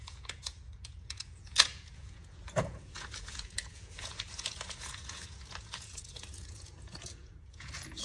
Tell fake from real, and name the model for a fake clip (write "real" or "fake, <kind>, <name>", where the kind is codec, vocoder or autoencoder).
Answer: fake, vocoder, Vocos